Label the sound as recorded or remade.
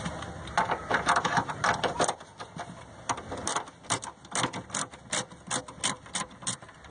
recorded